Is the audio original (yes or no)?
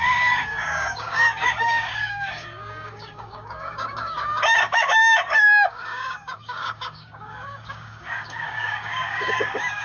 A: no